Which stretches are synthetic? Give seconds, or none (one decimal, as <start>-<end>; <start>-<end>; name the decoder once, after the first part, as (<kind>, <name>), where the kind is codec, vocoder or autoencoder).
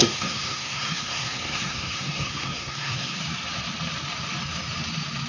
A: 0.0-3.2 (codec, SNAC)